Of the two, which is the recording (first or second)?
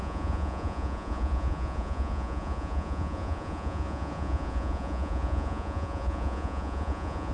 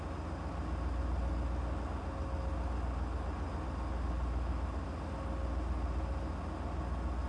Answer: second